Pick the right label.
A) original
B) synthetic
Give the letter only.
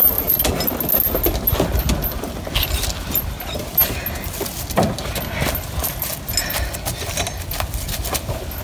A